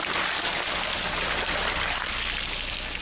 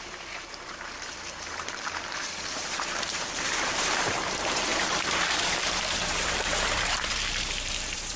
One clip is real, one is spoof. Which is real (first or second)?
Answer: first